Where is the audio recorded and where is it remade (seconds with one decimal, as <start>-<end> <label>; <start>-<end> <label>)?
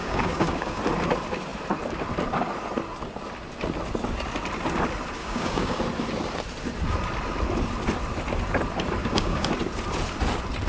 0.0-0.8 remade; 0.8-5.2 recorded; 5.2-5.8 remade; 5.8-9.0 recorded; 9.0-9.5 remade; 9.5-10.7 recorded